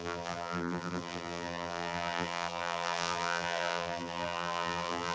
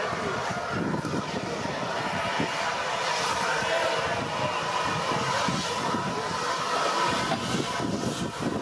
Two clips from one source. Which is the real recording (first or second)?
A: second